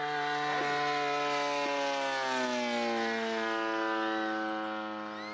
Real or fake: real